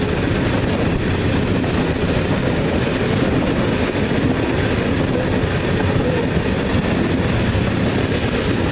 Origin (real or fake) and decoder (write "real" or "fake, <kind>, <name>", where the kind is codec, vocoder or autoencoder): real